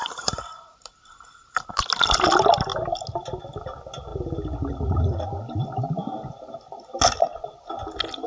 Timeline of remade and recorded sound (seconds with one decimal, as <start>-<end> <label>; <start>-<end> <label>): 0.0-1.8 remade; 1.8-8.3 recorded